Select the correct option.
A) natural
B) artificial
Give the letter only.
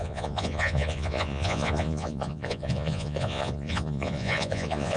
B